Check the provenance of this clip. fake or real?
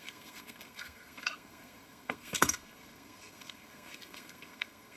fake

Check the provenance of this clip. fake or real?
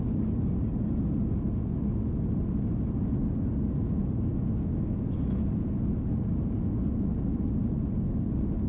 real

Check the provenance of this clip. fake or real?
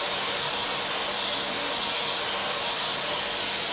real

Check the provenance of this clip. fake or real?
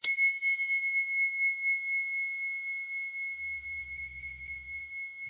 fake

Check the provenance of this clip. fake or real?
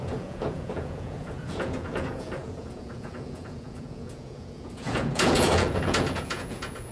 fake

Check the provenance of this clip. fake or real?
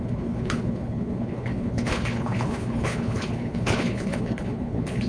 fake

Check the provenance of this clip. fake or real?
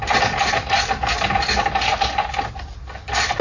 real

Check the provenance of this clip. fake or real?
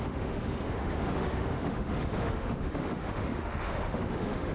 fake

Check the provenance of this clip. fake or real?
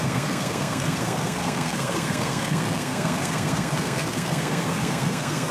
fake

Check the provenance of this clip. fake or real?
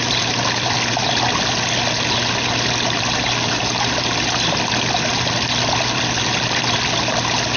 real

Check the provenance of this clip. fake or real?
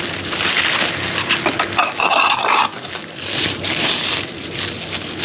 real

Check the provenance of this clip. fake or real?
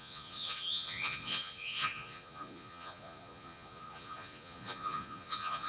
fake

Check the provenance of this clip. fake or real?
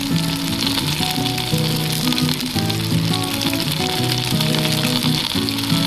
real